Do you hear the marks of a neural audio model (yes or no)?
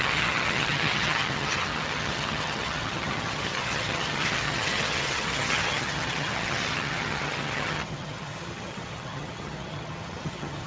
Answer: yes